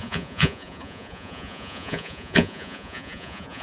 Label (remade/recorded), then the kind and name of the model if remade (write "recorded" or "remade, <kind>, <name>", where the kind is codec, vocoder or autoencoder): remade, vocoder, Vocos